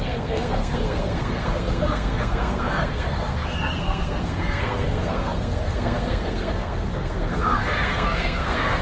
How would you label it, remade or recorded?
remade